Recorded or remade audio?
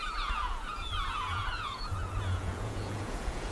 remade